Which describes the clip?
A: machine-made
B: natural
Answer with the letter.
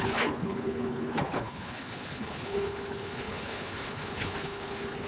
A